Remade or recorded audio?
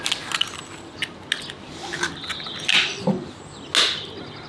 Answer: recorded